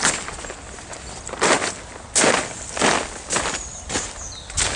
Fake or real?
real